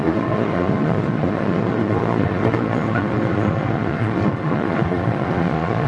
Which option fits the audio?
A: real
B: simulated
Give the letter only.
B